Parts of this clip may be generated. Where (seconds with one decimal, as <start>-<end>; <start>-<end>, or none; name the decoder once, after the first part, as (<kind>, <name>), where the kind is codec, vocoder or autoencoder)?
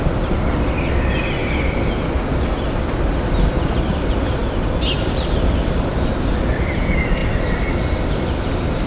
0.0-1.4 (vocoder, BigVGAN v2); 2.3-4.4; 5.0-5.9; 6.5-7.2; 8.5-8.9